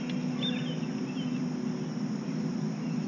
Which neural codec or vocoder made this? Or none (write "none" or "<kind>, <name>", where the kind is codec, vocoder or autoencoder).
none